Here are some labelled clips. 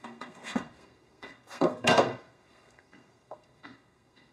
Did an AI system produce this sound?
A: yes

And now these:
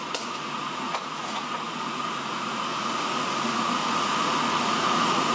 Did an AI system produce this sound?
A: yes